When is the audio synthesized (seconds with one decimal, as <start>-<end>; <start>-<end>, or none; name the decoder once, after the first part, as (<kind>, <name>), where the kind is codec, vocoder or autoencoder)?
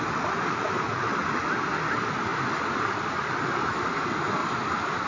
none